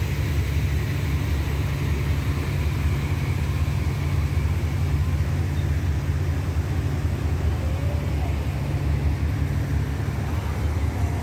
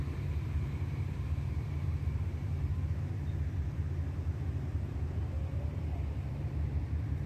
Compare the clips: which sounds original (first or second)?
first